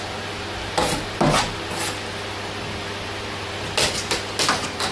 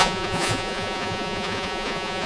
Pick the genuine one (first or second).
first